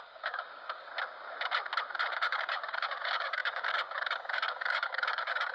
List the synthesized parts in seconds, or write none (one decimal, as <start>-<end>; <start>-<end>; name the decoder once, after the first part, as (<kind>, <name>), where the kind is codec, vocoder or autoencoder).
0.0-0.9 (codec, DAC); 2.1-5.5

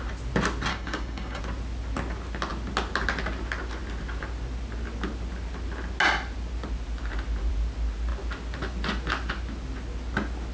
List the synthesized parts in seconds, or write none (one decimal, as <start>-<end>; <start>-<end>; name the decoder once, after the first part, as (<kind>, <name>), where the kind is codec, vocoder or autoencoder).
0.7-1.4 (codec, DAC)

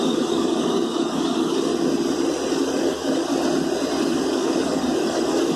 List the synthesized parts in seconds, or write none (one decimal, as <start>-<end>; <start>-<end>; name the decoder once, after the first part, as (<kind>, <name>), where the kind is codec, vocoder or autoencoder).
0.0-1.7 (codec, DAC); 2.5-3.3; 4.0-5.6